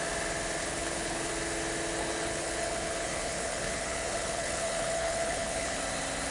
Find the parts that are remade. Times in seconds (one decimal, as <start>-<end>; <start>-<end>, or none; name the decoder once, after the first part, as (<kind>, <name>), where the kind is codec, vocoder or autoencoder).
0.6-1.3 (codec, HILCodec); 2.0-5.8